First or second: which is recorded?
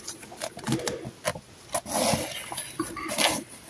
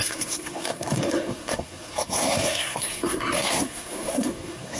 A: first